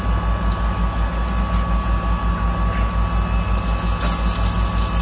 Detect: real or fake real